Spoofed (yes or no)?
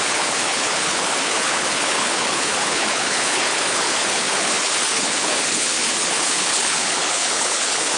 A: yes